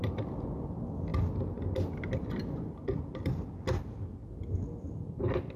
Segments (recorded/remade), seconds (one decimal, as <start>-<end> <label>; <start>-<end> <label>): 0.0-5.6 recorded